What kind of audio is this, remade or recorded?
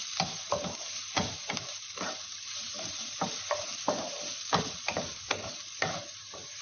remade